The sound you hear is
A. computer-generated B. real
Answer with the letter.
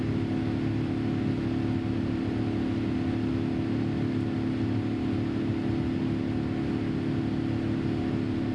B